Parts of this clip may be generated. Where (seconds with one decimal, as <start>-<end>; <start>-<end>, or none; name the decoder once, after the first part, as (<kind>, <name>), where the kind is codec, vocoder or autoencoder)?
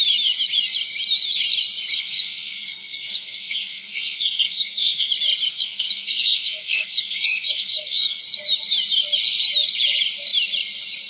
1.9-5.1 (codec, SNAC); 5.5-8.2